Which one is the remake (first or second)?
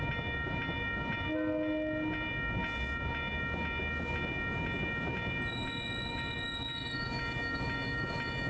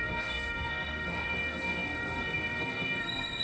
second